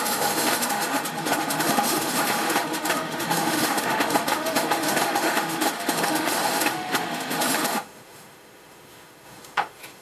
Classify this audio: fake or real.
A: fake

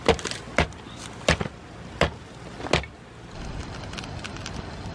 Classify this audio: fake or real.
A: real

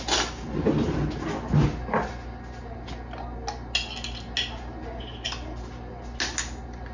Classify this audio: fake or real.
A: real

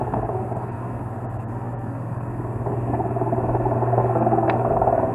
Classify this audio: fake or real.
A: fake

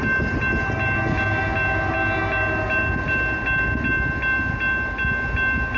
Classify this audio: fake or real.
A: real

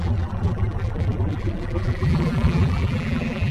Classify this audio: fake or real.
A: fake